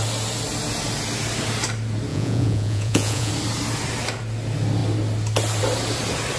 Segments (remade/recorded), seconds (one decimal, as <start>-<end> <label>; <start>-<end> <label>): 0.0-2.1 recorded; 2.1-3.3 remade; 3.3-6.4 recorded